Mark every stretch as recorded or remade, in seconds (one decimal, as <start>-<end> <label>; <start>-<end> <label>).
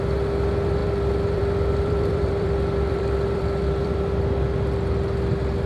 0.0-0.8 recorded; 0.8-4.2 remade; 4.2-5.7 recorded